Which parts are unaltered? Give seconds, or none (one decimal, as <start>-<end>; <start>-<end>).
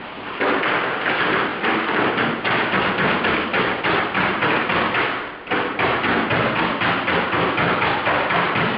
0.0-3.5; 6.0-8.8